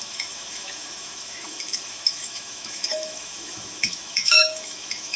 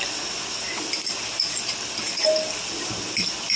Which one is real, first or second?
second